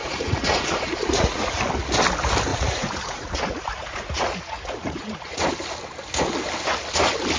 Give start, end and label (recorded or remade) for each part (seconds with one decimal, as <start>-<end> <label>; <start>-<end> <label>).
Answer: 0.0-1.6 remade; 1.6-2.5 recorded; 2.5-5.5 remade; 5.5-7.4 recorded